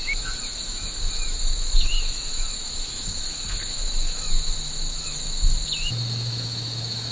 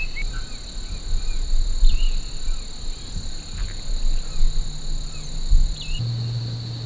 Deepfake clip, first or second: first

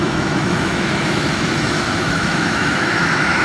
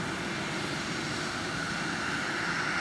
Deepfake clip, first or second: first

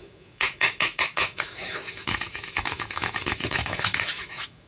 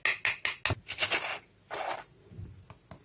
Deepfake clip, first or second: first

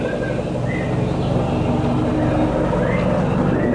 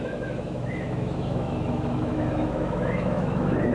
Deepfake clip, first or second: second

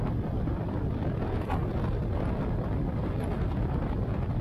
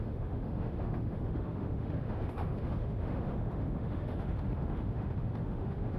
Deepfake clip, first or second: second